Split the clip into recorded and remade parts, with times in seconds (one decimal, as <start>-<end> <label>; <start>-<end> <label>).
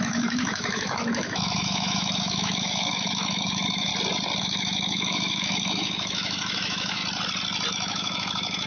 0.0-3.9 remade; 3.9-4.4 recorded; 4.4-7.0 remade; 7.0-7.7 recorded; 7.7-8.7 remade